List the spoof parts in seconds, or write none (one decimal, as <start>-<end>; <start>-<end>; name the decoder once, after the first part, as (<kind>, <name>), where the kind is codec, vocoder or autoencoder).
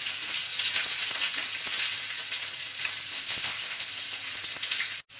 3.1-3.9 (codec, ZipCodec)